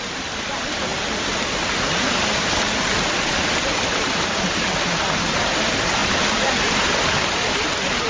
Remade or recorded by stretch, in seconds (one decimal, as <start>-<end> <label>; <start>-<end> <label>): 0.0-8.1 recorded